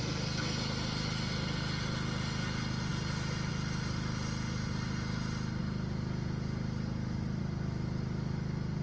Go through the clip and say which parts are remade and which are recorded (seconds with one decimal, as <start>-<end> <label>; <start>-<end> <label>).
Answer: 0.0-8.8 recorded